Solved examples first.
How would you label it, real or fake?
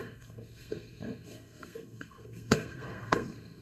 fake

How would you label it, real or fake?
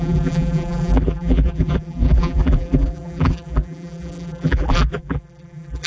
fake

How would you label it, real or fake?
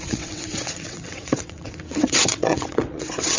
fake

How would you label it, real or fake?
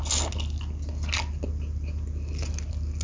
real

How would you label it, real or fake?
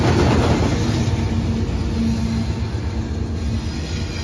real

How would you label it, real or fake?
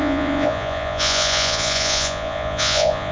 fake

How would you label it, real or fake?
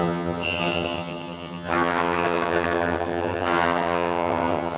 fake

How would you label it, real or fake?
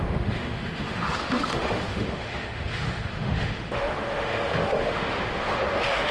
fake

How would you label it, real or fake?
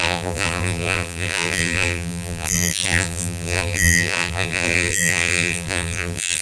fake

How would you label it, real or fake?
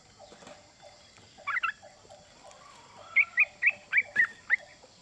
fake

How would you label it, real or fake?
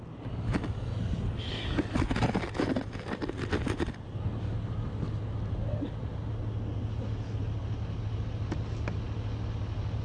real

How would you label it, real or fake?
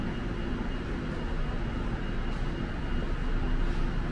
real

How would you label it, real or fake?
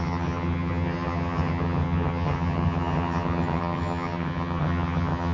fake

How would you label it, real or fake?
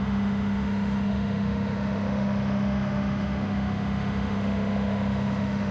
fake